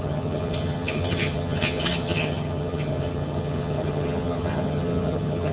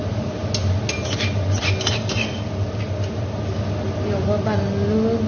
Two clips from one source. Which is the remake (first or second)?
first